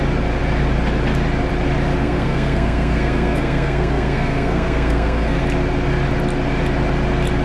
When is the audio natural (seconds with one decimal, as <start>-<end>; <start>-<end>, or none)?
0.0-2.0; 5.4-7.4

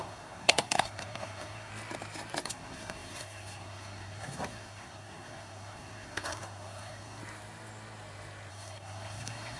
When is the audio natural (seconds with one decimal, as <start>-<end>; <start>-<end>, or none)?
1.7-2.4; 7.2-8.5

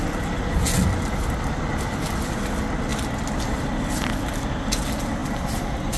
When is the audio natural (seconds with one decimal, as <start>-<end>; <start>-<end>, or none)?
0.0-6.0

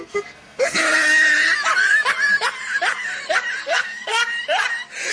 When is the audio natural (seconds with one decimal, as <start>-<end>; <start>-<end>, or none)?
0.8-3.6; 4.2-5.1

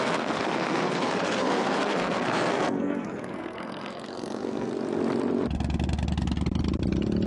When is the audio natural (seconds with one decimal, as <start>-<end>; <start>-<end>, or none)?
4.7-7.3

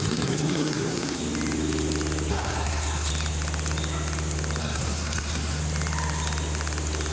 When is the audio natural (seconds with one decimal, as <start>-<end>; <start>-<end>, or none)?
1.2-2.3; 3.1-4.6; 5.6-7.1

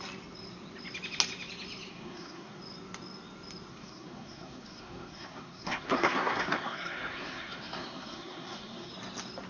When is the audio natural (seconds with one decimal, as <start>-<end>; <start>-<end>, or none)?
0.0-1.9; 2.6-3.7; 8.9-9.5